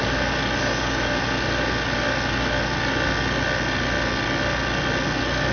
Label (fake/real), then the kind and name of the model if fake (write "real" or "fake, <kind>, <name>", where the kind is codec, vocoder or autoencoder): real